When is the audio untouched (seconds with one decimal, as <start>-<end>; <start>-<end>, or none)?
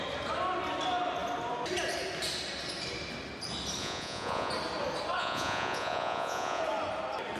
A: 0.0-3.8; 4.5-5.2; 6.6-7.4